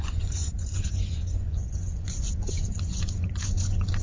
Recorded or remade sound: remade